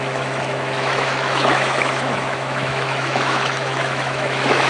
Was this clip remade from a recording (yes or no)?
yes